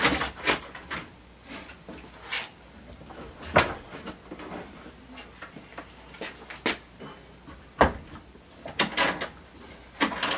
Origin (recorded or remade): recorded